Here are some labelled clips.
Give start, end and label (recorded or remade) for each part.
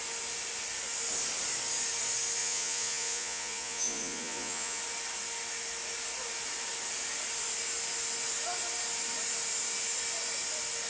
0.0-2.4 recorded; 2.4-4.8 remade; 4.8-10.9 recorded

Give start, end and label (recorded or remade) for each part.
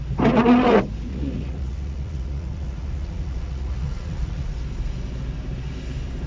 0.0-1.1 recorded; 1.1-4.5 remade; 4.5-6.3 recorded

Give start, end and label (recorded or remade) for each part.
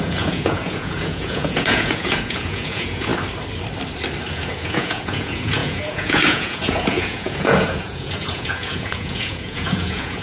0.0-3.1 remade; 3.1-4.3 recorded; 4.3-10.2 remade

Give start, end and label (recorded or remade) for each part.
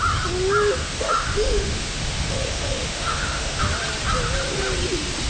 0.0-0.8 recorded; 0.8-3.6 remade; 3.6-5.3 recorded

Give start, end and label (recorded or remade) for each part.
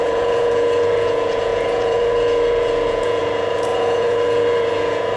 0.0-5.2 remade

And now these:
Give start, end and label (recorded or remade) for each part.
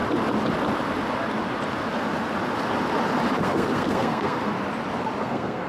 0.0-3.4 recorded; 3.4-4.5 remade; 4.5-5.2 recorded; 5.2-5.7 remade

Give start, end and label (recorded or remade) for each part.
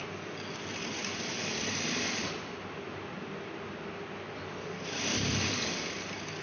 0.0-6.4 recorded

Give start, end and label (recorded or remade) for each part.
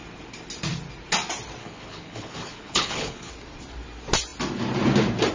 0.0-1.6 recorded; 1.6-3.3 remade; 3.3-5.3 recorded